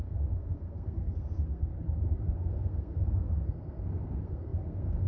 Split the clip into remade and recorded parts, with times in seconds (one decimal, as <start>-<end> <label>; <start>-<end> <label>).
0.0-1.7 remade; 1.7-2.2 recorded; 2.2-5.1 remade